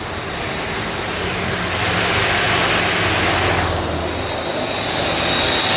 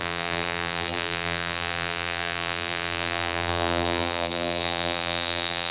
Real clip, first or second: first